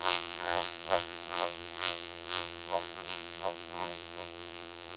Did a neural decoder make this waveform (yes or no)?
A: yes